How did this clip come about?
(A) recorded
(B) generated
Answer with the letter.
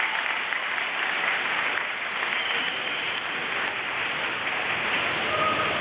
A